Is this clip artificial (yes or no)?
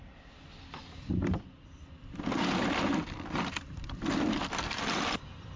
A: yes